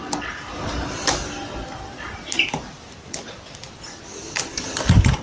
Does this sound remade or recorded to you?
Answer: recorded